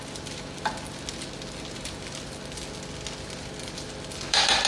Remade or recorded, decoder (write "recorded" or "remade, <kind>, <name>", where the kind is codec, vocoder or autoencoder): recorded